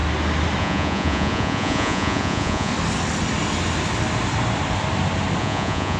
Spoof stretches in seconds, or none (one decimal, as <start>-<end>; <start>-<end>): 0.6-2.7; 5.4-6.0